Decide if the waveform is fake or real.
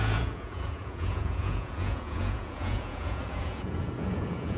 fake